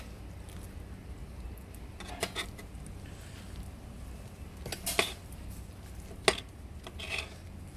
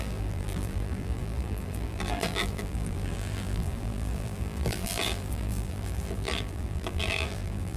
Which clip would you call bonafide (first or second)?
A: first